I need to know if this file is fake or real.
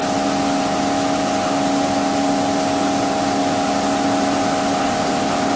real